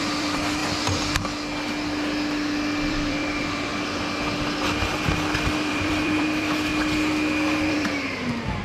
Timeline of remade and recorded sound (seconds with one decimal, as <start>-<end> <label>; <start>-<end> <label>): 0.0-0.6 remade; 0.6-2.9 recorded; 2.9-3.7 remade; 3.7-5.7 recorded; 5.7-6.7 remade; 6.7-7.7 recorded; 7.7-8.6 remade

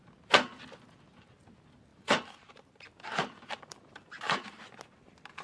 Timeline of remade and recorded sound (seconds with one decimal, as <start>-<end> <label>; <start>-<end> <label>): 0.0-1.9 recorded; 1.9-2.8 remade; 2.8-3.2 recorded; 3.2-4.6 remade; 4.6-5.4 recorded

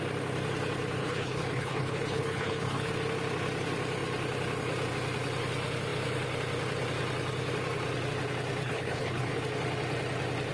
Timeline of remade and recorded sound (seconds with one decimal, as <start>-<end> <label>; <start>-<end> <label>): 0.0-1.0 recorded; 1.0-2.9 remade; 2.9-8.6 recorded; 8.6-9.4 remade; 9.4-10.5 recorded

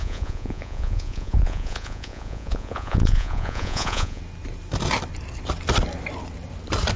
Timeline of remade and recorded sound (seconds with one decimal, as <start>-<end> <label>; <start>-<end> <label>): 0.0-4.2 remade; 4.2-7.0 recorded